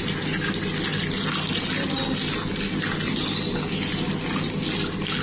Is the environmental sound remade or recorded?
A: recorded